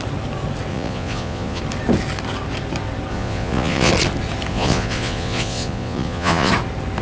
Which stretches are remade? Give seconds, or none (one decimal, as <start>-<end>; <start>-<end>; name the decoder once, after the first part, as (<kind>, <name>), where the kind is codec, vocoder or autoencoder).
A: 0.7-1.6 (vocoder, Vocos); 3.1-3.9; 4.5-6.5